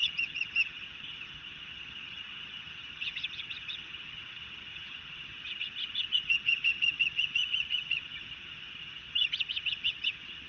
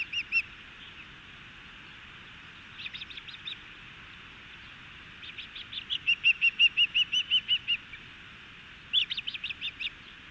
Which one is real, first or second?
second